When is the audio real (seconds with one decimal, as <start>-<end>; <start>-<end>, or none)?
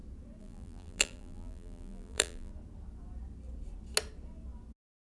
0.0-0.4; 2.5-5.1